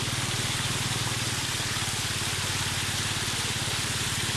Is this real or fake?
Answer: real